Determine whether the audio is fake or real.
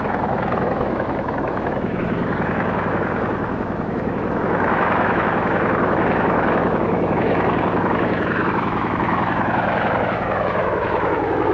fake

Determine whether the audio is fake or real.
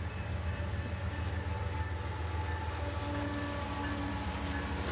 real